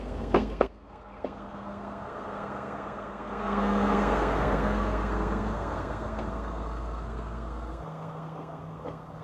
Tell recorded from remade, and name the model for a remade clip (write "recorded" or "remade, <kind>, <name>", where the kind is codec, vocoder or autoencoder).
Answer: remade, codec, SNAC